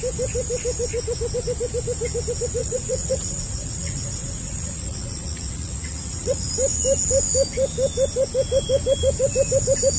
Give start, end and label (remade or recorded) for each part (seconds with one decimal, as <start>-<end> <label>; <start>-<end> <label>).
0.0-2.6 recorded; 2.6-6.5 remade; 6.5-10.0 recorded